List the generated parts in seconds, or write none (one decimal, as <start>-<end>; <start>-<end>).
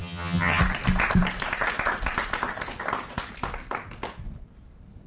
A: 0.0-0.6